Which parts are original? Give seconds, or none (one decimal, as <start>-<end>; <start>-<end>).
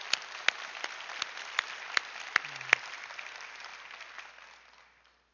0.0-5.3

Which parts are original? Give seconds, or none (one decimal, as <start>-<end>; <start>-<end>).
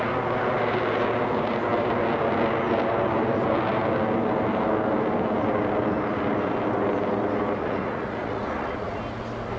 0.0-7.6; 9.0-9.6